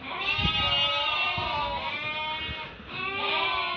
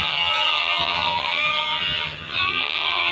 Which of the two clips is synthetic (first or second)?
second